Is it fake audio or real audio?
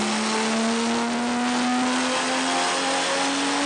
real